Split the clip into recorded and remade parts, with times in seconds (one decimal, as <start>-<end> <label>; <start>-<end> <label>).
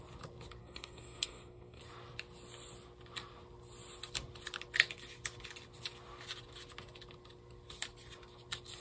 0.0-0.6 recorded; 0.6-1.8 remade; 1.8-8.8 recorded